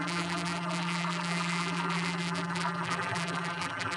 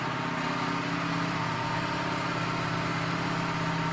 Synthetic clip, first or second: first